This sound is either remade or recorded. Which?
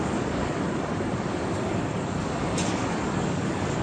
remade